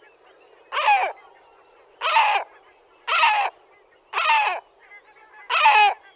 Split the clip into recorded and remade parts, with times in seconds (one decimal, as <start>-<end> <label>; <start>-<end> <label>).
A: 0.0-6.2 recorded

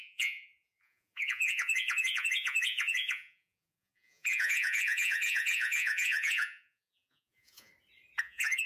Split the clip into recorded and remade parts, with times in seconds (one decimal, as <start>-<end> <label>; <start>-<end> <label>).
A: 0.0-7.7 remade; 7.7-8.2 recorded; 8.2-8.7 remade

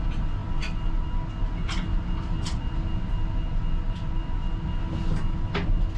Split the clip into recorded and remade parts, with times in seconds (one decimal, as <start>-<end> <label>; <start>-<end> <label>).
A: 0.0-6.0 recorded

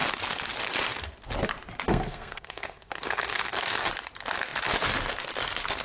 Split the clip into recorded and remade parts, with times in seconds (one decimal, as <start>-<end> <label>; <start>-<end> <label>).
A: 0.0-1.9 recorded; 1.9-3.9 remade; 3.9-5.8 recorded

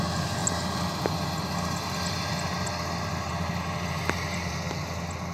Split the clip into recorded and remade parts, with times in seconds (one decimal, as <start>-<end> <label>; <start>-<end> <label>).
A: 0.0-5.3 recorded

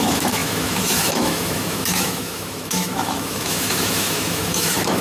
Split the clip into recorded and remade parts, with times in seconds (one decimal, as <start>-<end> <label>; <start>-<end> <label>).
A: 0.0-5.0 remade